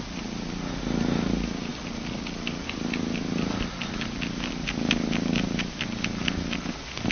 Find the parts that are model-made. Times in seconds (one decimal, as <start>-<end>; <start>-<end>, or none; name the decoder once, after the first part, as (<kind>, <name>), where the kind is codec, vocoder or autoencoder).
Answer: none